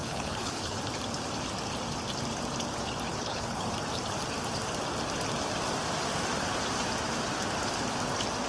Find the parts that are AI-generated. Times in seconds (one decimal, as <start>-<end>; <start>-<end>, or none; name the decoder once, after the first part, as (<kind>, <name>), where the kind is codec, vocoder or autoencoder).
0.0-0.8 (codec, HILCodec); 3.1-3.7